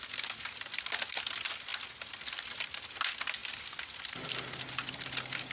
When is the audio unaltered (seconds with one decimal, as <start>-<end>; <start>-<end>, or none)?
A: 0.0-5.5